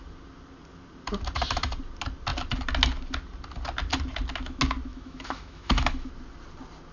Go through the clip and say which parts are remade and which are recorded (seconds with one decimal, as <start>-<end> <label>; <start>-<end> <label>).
0.0-4.9 recorded; 4.9-6.1 remade; 6.1-6.9 recorded